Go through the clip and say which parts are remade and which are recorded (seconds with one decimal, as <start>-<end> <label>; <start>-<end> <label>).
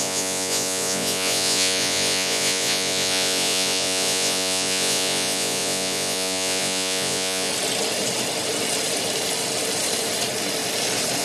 0.0-7.5 remade; 7.5-11.2 recorded